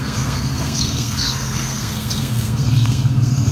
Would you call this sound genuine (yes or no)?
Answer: no